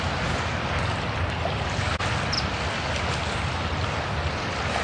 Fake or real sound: real